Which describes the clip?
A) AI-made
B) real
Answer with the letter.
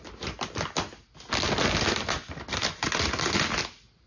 B